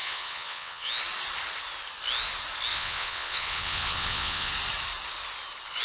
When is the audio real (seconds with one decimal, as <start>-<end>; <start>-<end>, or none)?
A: 0.9-2.7; 4.5-5.8